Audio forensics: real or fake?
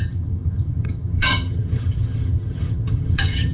fake